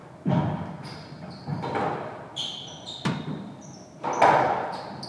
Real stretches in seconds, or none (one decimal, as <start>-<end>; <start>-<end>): 0.0-5.1